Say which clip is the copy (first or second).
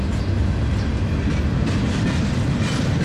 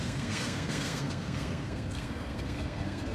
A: second